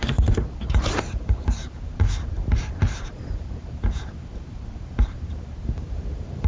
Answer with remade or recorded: remade